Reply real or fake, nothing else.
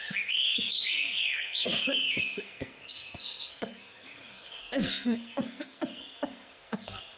fake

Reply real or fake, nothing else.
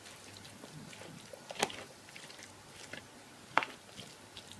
real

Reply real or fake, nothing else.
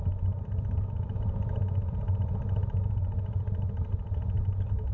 real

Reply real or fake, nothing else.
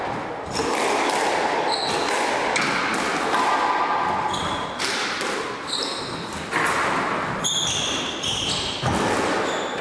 real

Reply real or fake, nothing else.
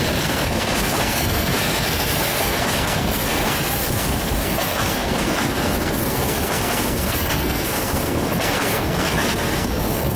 fake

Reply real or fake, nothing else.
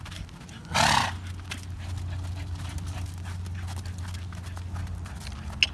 real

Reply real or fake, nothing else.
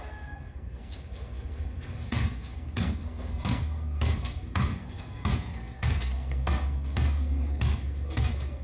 fake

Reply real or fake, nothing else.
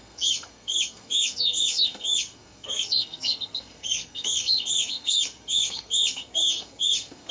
fake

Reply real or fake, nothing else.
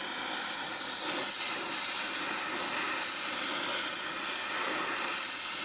real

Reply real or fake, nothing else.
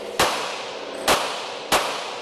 real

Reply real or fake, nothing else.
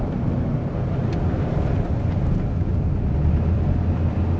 real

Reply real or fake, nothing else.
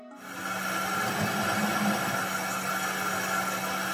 real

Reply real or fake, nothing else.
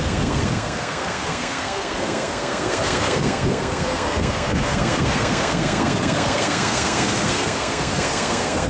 fake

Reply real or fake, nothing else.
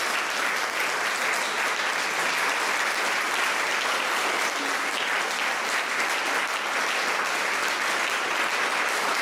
real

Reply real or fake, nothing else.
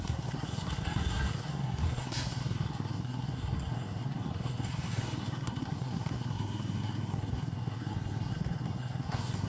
fake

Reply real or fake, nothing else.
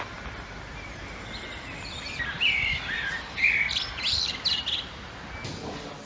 real